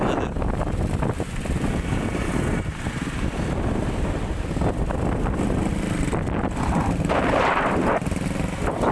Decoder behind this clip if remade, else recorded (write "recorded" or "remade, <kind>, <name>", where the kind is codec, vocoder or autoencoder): recorded